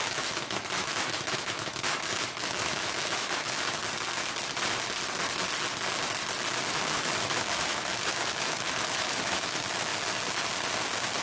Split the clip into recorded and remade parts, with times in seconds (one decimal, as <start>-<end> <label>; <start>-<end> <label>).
0.0-3.8 remade; 3.8-6.7 recorded; 6.7-9.9 remade; 9.9-11.2 recorded